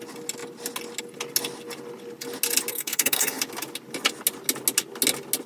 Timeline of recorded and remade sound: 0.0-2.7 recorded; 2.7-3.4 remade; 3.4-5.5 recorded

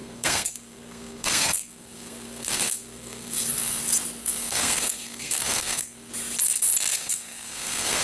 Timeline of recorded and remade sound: 0.0-3.8 remade; 3.8-4.2 recorded; 4.2-6.1 remade; 6.1-6.9 recorded; 6.9-8.0 remade

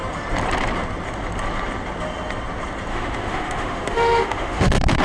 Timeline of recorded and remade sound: 0.0-2.9 recorded; 2.9-5.0 remade